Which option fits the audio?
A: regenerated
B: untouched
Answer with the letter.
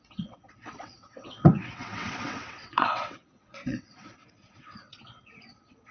A